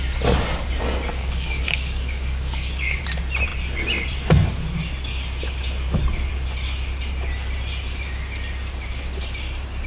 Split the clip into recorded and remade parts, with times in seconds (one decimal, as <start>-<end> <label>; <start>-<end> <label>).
0.0-1.1 recorded; 1.1-3.0 remade; 3.0-9.9 recorded